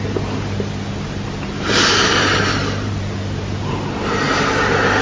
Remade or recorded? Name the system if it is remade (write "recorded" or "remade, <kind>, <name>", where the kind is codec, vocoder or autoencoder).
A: remade, vocoder, BigVGAN v2